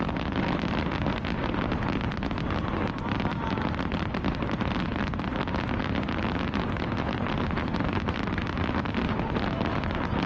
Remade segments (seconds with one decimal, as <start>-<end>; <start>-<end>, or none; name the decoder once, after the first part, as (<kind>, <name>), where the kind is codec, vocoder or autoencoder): none